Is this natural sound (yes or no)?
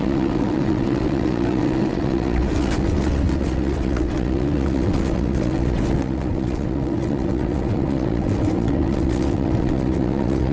no